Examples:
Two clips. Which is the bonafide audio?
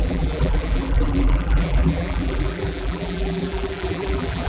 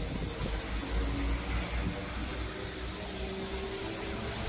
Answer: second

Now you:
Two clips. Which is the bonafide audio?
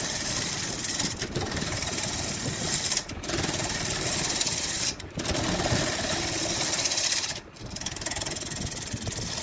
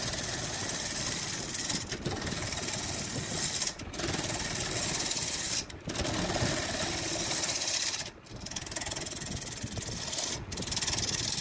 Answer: second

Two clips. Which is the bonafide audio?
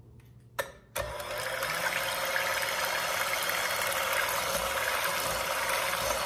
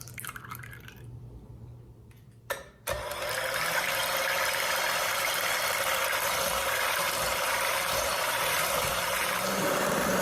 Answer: first